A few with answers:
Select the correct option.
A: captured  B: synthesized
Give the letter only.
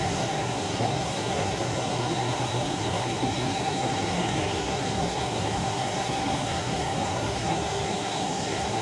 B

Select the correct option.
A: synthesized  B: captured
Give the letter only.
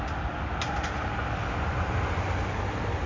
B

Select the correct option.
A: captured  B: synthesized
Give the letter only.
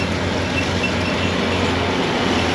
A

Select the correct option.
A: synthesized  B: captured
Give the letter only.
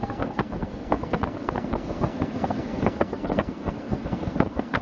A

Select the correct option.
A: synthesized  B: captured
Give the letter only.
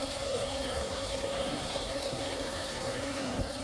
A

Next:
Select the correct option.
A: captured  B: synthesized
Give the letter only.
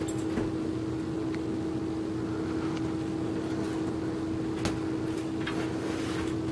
A